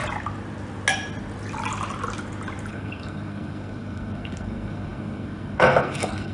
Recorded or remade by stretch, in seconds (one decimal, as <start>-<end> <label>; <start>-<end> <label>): 0.0-2.7 recorded; 2.7-6.3 remade